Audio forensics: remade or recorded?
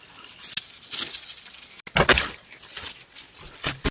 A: recorded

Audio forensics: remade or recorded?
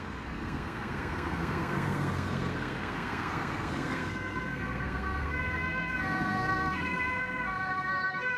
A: remade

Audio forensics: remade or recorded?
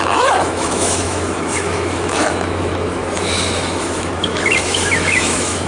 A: remade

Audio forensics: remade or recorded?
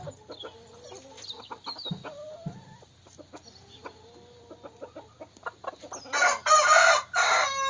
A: recorded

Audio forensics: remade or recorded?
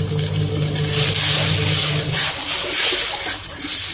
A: recorded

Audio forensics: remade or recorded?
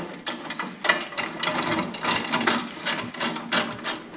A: recorded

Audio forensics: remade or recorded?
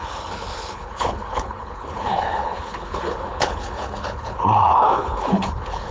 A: remade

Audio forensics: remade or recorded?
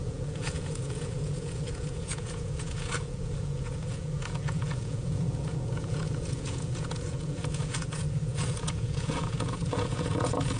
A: remade